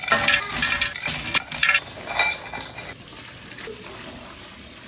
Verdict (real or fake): real